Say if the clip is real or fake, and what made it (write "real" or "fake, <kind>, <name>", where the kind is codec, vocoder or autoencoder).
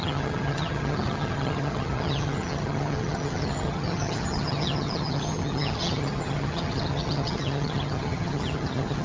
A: fake, vocoder, HiFi-GAN